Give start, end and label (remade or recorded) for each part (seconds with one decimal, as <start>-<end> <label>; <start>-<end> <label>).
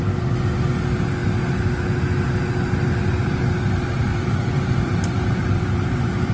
0.0-4.1 recorded; 4.1-6.3 remade